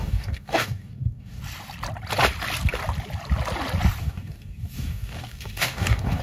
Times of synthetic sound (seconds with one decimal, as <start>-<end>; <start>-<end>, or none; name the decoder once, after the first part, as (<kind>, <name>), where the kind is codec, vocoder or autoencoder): 0.0-1.4 (codec, DAC); 4.0-6.2